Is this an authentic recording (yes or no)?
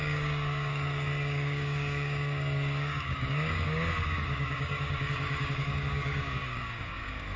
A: no